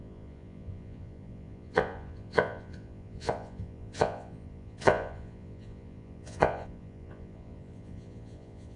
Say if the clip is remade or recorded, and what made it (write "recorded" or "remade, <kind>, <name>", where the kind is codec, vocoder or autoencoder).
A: remade, vocoder, Vocos